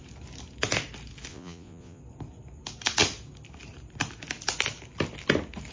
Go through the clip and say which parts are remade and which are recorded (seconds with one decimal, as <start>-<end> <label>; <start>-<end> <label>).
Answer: 0.0-1.3 recorded; 1.3-2.0 remade; 2.0-5.7 recorded